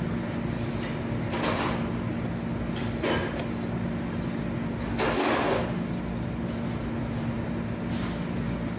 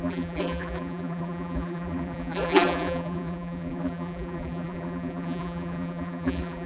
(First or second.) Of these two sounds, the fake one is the second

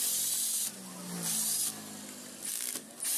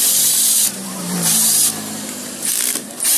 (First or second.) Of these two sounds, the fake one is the second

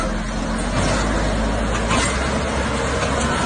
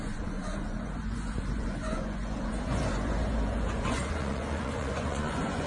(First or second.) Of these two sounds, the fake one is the second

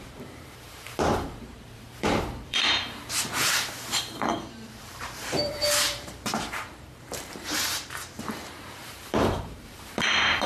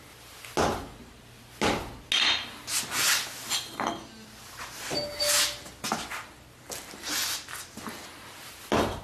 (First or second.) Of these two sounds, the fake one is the first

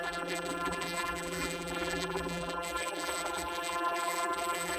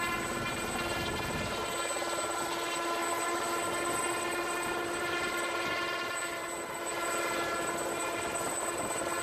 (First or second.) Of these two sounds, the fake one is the first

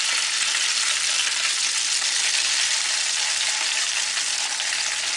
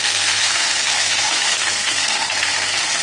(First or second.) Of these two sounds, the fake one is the second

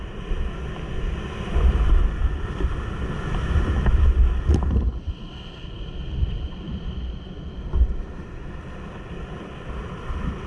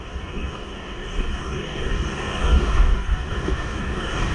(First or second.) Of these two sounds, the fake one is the second